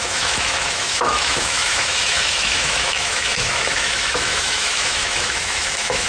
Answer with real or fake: fake